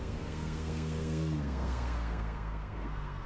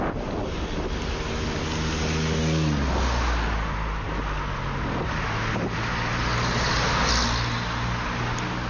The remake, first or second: first